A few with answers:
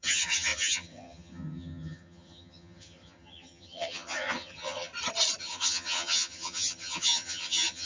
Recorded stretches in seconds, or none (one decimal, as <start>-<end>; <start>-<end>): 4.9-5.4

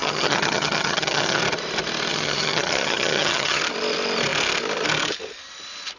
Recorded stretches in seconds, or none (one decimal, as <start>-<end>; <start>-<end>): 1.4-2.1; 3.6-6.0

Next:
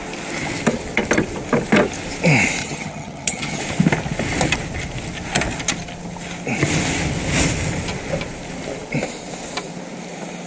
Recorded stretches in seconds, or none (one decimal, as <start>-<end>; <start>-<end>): 0.0-2.6; 3.6-10.5